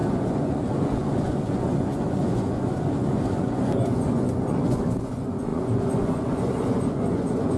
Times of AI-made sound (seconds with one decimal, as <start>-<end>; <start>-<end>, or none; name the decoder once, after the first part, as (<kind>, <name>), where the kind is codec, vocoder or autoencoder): 0.0-7.6 (vocoder, Vocos)